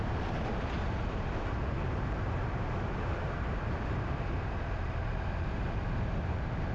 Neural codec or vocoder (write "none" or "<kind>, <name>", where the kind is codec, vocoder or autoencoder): vocoder, BigVGAN v2